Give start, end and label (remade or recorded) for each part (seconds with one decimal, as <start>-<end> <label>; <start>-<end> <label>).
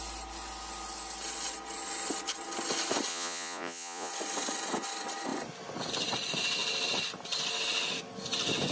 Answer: 0.0-3.1 recorded; 3.1-4.1 remade; 4.1-8.7 recorded